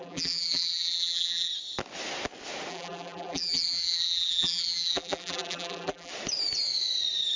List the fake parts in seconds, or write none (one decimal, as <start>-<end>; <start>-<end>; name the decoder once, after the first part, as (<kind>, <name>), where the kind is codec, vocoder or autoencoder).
0.0-1.5 (vocoder, BigVGAN v2); 2.7-6.1